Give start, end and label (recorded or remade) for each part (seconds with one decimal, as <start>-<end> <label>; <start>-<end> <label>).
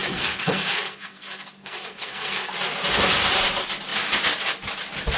0.0-2.5 remade; 2.5-5.2 recorded